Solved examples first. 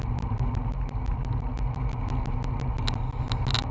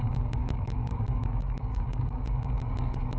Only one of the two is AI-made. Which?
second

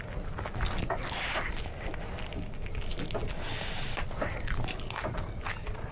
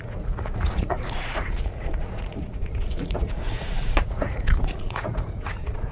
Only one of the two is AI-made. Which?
second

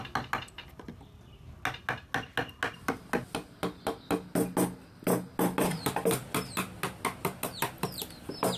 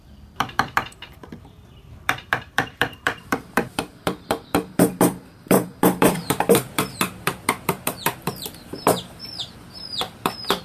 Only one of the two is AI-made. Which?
second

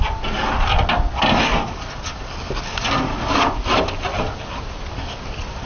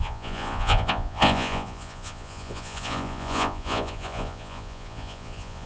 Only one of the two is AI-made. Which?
second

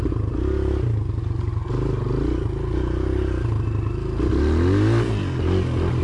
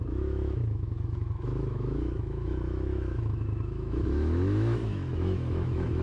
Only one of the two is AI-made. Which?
second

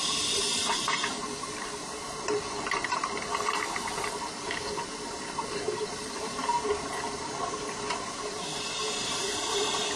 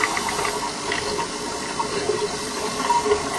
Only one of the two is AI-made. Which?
first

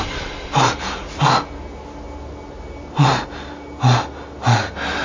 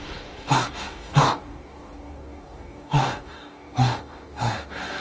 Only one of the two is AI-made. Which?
second